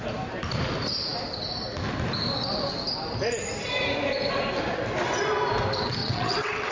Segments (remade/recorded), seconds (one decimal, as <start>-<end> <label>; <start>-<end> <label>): 0.0-6.0 recorded; 6.0-6.7 remade